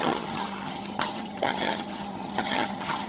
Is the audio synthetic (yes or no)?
yes